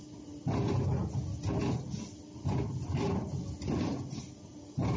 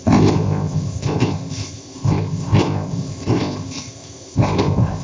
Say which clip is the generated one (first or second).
second